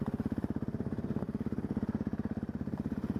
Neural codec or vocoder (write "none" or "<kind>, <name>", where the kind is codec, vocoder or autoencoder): none